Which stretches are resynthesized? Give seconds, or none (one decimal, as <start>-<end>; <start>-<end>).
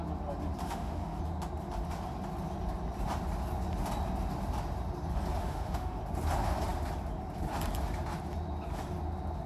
0.6-1.2; 5.4-6.0